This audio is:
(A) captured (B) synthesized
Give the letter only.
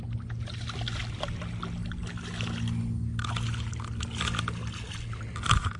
A